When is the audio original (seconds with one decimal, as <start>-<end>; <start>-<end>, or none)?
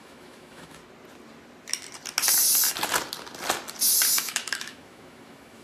0.8-4.2